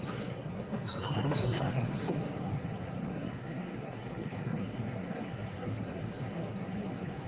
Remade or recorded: remade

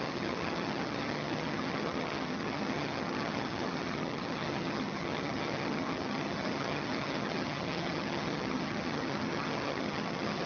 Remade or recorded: remade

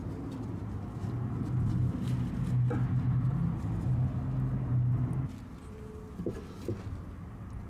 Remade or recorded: recorded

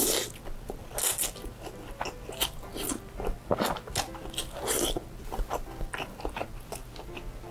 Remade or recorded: recorded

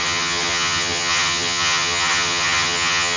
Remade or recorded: remade